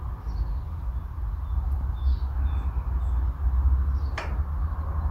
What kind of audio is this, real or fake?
real